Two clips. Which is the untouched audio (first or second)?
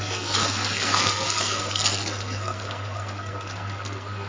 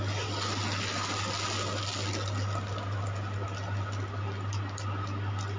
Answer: second